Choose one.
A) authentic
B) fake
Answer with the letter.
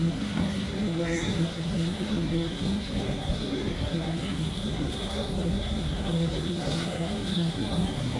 B